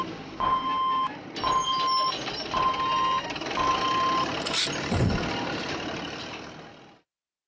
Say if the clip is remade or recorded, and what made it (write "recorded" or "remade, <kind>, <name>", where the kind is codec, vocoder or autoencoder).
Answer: recorded